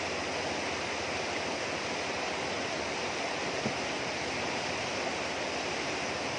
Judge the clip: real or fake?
real